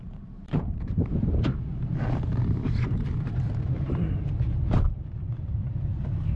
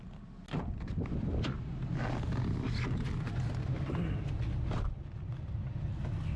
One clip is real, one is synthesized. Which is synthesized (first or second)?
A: first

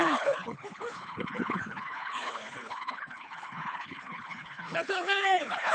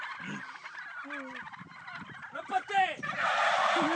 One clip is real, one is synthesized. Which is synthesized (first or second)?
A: first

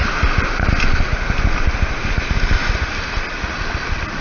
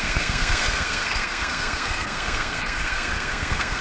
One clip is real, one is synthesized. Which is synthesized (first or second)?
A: second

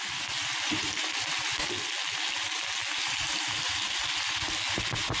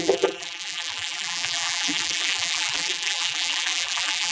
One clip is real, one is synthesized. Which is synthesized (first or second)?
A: second